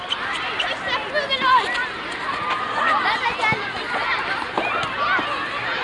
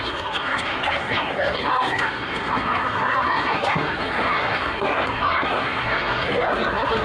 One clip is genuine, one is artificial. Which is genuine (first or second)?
first